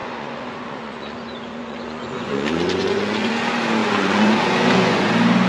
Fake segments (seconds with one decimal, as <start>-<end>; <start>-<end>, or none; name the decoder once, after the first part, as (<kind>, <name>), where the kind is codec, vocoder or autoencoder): 0.0-3.3 (vocoder, Vocos); 3.8-5.1